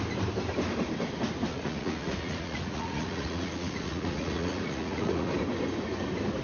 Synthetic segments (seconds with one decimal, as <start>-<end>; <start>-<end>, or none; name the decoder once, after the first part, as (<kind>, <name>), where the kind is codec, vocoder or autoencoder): 1.5-5.3 (vocoder, Vocos)

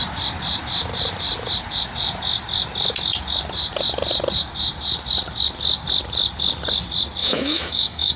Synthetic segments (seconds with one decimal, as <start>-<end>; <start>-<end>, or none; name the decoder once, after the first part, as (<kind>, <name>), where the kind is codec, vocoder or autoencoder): 7.2-8.2 (autoencoder, DAC-VAE)

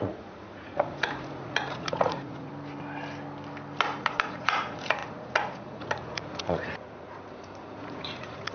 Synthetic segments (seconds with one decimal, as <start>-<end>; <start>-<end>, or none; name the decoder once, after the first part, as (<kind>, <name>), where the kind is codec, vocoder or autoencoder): 0.0-2.5 (vocoder, Vocos); 4.0-8.5

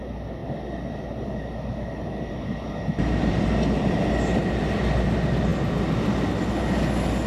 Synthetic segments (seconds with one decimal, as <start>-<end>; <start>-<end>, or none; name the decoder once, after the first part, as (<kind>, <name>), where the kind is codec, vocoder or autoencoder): none

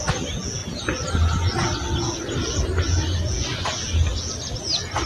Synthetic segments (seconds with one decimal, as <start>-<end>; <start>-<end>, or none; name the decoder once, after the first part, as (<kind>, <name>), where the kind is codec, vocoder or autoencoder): none

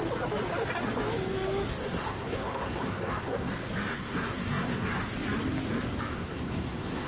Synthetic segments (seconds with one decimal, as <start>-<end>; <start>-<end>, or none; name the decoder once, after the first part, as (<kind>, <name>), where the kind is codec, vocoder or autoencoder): 1.7-3.5 (codec, SNAC); 3.9-5.0; 6.1-7.1

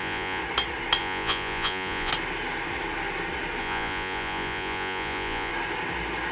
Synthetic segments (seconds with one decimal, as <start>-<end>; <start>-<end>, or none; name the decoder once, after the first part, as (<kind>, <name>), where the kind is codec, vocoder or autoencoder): 0.0-0.4 (vocoder, Vocos); 1.0-2.1; 3.6-5.5